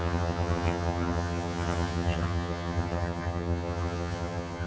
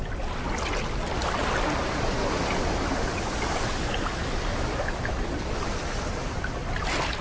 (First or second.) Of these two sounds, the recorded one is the second